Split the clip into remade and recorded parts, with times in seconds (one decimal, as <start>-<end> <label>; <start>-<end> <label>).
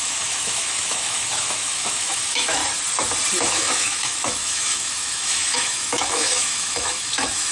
0.0-2.6 remade; 2.6-3.5 recorded; 3.5-7.5 remade